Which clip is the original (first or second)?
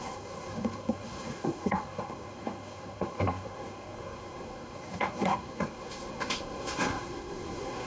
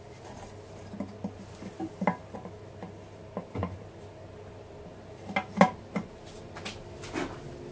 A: second